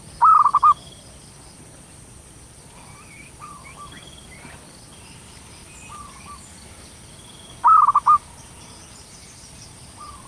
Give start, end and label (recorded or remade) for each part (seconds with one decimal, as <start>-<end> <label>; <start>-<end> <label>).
0.0-10.3 recorded